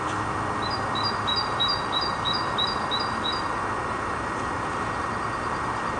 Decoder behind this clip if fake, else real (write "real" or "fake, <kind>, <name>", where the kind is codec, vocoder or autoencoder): real